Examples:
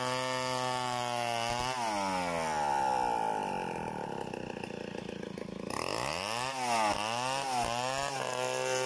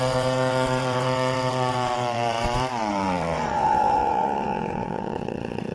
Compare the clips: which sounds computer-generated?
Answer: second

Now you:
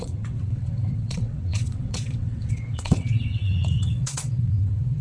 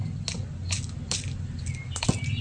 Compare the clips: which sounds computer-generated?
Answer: first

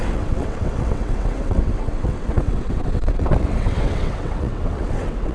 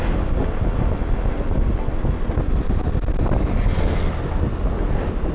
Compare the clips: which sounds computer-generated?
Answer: first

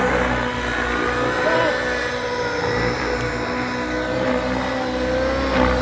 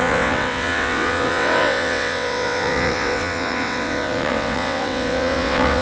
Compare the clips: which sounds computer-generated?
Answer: second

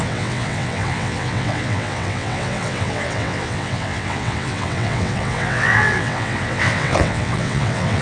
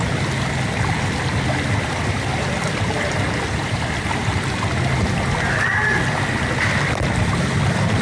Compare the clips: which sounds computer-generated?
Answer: first